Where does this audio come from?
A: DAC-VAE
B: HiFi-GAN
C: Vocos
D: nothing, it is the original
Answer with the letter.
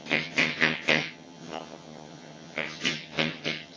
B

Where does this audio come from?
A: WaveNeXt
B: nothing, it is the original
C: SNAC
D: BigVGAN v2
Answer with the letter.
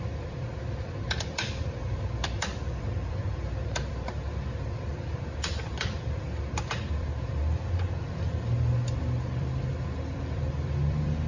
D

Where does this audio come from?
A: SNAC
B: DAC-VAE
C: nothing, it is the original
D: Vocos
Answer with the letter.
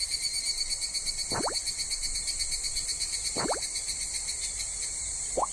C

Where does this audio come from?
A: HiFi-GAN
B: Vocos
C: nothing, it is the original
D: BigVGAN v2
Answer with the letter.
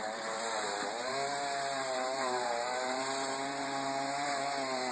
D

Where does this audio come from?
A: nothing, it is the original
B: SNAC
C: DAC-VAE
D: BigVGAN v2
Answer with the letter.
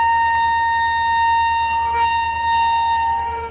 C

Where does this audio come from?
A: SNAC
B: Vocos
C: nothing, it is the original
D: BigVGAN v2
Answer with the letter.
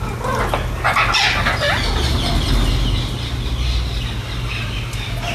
C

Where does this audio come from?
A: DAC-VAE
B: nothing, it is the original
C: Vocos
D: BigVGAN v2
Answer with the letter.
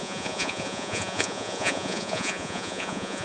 C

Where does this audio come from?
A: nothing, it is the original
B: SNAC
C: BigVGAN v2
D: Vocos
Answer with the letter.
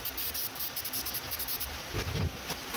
C